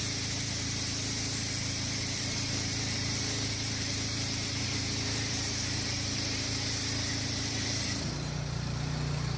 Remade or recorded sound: remade